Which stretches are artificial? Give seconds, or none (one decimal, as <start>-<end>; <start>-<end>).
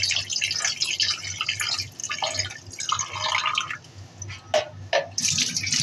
none